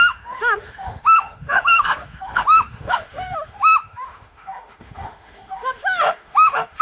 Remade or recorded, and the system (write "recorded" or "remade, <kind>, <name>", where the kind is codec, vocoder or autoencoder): remade, autoencoder, DAC-VAE